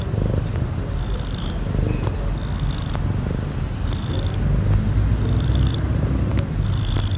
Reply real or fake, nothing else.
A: real